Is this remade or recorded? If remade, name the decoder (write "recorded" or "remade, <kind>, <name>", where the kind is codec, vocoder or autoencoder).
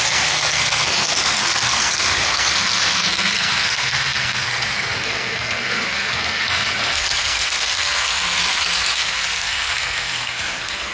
remade, codec, SNAC